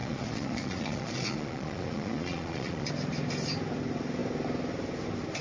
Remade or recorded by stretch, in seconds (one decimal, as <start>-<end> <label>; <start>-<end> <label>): 0.0-2.9 remade; 2.9-5.4 recorded